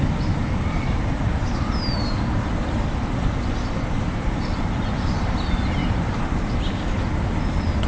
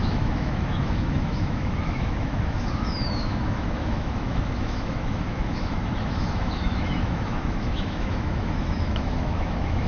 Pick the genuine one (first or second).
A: first